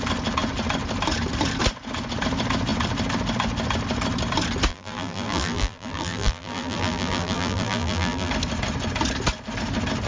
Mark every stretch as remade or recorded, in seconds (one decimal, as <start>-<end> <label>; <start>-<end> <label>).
0.0-4.7 recorded; 4.7-8.3 remade; 8.3-10.1 recorded